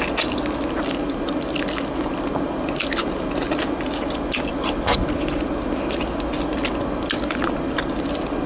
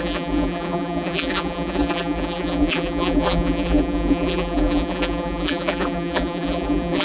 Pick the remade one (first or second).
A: second